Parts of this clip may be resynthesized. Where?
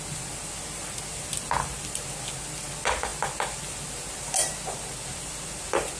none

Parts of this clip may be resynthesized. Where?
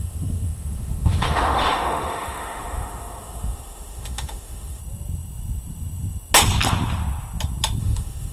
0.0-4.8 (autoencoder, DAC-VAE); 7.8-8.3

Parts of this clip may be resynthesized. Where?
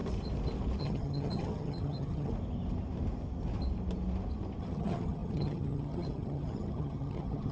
0.8-2.3 (vocoder, HiFi-GAN); 4.6-7.5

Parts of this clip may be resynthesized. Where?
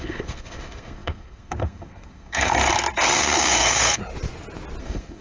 0.0-2.5 (codec, SNAC); 3.2-4.0; 4.8-5.2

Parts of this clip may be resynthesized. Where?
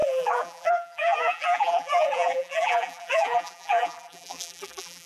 0.0-5.1 (vocoder, BigVGAN v2)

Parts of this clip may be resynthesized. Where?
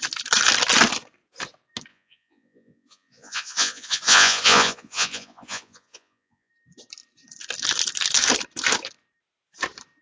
1.9-6.5 (vocoder, Vocos)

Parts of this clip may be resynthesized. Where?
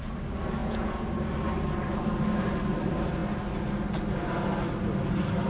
0.6-1.1 (vocoder, Vocos)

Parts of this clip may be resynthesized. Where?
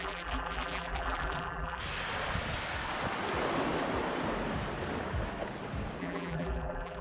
0.0-1.8 (vocoder, BigVGAN v2); 6.0-7.0